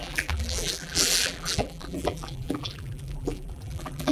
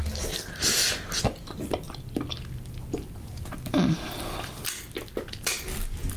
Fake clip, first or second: first